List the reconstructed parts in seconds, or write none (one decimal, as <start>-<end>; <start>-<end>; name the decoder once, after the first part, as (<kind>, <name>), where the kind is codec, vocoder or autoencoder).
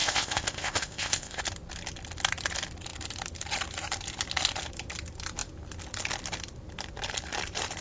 0.0-1.4 (codec, ZipCodec)